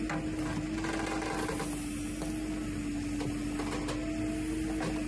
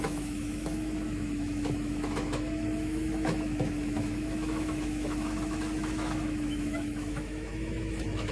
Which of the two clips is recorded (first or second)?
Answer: first